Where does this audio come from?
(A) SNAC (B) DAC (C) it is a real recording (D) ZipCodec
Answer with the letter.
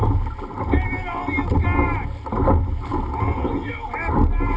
C